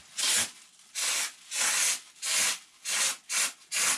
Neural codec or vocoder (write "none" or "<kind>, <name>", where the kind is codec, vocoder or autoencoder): none